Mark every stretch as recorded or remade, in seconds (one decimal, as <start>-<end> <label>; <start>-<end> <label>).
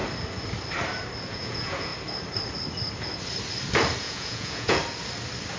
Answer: 0.0-1.3 recorded; 1.3-1.9 remade; 1.9-4.0 recorded; 4.0-4.8 remade; 4.8-5.6 recorded